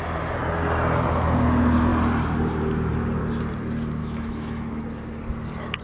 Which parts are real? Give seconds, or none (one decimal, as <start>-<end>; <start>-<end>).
0.0-4.0; 4.8-5.8